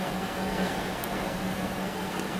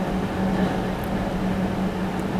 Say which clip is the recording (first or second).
second